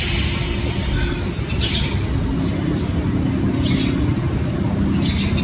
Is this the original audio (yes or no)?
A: yes